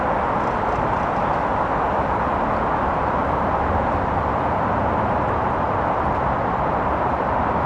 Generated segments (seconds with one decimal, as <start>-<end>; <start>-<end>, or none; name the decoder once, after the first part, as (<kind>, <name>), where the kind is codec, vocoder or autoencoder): 3.2-7.7 (vocoder, BigVGAN v2)